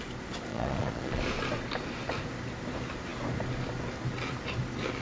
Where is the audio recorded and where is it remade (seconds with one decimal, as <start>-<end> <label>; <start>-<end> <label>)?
0.0-0.5 recorded; 0.5-1.2 remade; 1.2-5.0 recorded

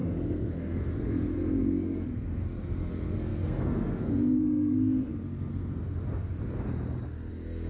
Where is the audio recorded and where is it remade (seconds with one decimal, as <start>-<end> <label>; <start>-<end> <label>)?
0.0-5.8 remade; 5.8-7.3 recorded; 7.3-7.7 remade

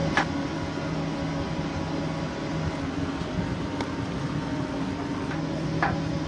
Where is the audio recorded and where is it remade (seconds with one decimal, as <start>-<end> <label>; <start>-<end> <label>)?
0.0-6.3 recorded